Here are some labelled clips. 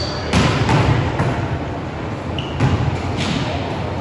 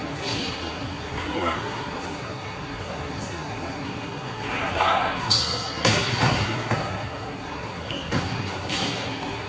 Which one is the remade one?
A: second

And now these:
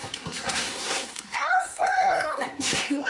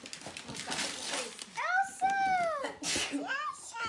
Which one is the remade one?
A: first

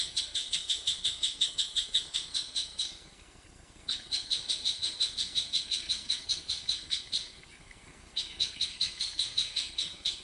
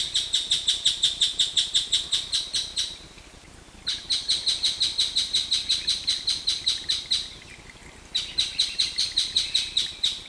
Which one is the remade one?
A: first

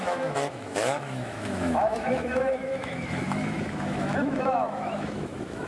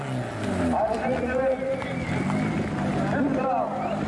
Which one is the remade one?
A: first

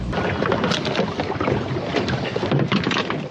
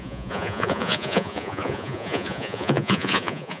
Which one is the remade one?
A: second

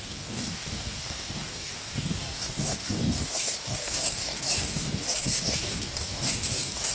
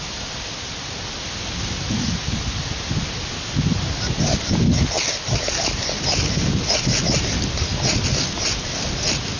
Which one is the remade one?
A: first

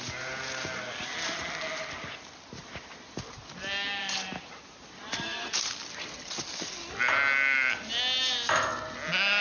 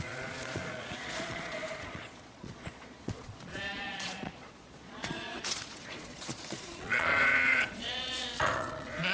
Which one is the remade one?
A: second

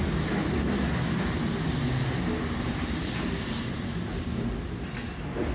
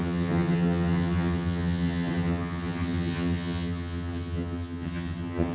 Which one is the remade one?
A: second